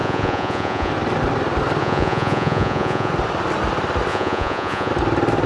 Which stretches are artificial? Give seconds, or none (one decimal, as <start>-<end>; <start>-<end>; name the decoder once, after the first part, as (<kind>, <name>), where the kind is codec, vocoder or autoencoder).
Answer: 0.0-0.9 (vocoder, Vocos); 1.8-3.1; 4.1-4.9